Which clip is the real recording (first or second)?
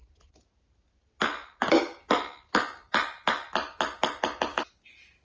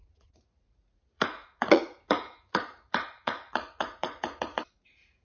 first